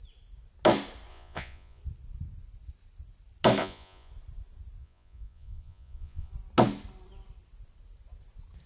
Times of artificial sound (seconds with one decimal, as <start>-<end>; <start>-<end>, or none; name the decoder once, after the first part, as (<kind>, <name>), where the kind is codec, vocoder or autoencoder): 1.1-1.8 (vocoder, Vocos); 3.6-4.1; 4.8-6.3